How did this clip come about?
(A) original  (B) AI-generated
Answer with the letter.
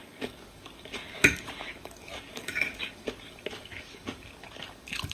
B